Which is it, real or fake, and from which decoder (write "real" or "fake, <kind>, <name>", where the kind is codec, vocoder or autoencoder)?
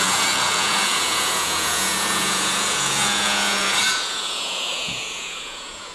fake, vocoder, Vocos